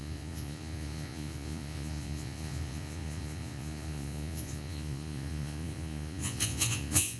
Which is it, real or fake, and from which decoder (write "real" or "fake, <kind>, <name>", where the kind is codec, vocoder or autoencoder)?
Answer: fake, vocoder, Vocos